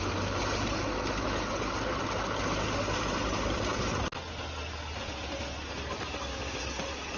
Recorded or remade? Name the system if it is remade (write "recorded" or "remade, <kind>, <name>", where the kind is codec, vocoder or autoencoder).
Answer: recorded